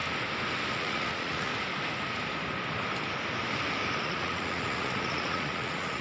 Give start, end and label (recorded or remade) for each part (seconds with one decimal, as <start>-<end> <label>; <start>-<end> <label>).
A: 0.0-0.7 recorded; 0.7-1.5 remade; 1.5-4.0 recorded; 4.0-6.0 remade